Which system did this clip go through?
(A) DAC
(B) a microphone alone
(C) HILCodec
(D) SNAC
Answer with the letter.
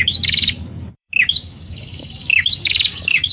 A